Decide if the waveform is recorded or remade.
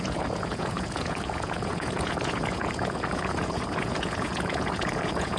remade